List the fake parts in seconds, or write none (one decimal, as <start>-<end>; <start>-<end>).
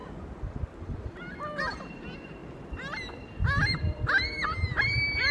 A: 0.8-2.4; 3.2-5.3